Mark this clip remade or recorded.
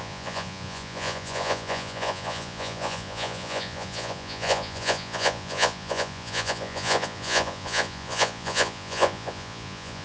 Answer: remade